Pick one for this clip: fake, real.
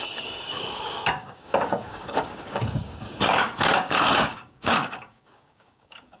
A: fake